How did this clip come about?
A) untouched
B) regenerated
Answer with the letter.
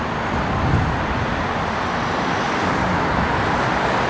A